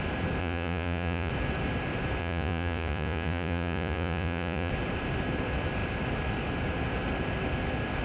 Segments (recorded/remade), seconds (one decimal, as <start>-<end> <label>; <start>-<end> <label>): 0.0-0.4 recorded; 0.4-1.3 remade; 1.3-2.2 recorded; 2.2-4.7 remade; 4.7-8.0 recorded

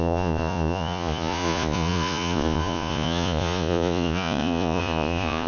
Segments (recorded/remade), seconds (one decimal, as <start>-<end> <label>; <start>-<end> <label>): 0.0-5.5 remade

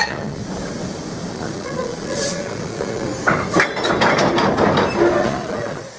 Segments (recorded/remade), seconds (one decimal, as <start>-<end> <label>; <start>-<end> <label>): 0.0-0.4 remade; 0.4-1.3 recorded; 1.3-3.1 remade; 3.1-5.2 recorded; 5.2-6.0 remade

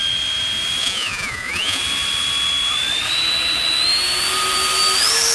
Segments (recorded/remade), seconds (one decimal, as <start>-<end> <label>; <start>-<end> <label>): 0.0-0.8 recorded; 0.8-1.8 remade; 1.8-5.3 recorded

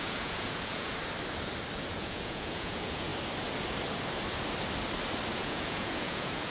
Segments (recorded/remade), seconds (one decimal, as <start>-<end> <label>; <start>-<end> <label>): 0.0-0.9 remade; 0.9-1.9 recorded; 1.9-3.1 remade; 3.1-5.3 recorded; 5.3-6.5 remade

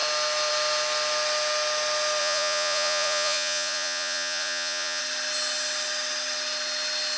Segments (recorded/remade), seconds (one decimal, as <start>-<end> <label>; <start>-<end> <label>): 0.0-2.2 recorded; 2.2-5.0 remade; 5.0-7.2 recorded

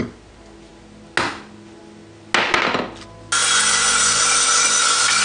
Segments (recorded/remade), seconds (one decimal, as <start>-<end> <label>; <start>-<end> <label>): 0.0-3.4 recorded; 3.4-4.2 remade; 4.2-5.2 recorded